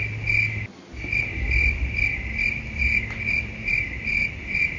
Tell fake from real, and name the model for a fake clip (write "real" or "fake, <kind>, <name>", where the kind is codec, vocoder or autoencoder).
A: real